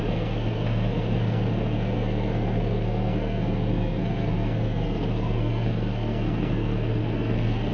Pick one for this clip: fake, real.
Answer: fake